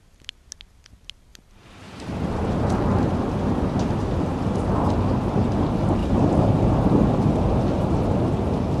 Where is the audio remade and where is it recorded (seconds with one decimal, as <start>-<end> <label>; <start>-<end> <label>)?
0.0-6.0 recorded; 6.0-7.3 remade; 7.3-8.8 recorded